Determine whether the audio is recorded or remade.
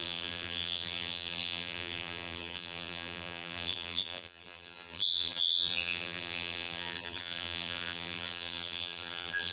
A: remade